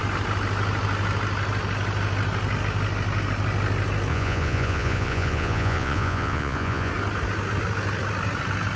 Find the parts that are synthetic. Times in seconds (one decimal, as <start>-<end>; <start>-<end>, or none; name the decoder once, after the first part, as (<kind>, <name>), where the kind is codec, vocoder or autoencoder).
4.1-6.9 (vocoder, Vocos)